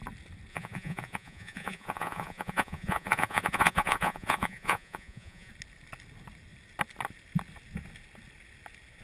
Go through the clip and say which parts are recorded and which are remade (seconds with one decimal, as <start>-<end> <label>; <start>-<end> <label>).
0.0-0.5 recorded; 0.5-5.5 remade; 5.5-9.0 recorded